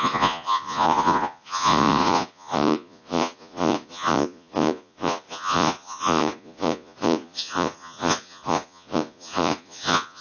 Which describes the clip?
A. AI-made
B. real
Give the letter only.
A